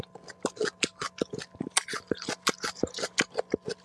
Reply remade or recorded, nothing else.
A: recorded